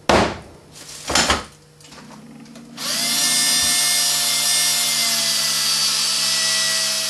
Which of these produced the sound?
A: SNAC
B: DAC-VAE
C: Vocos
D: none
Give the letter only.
D